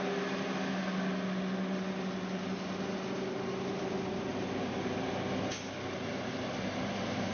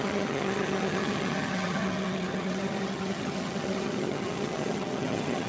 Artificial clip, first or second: second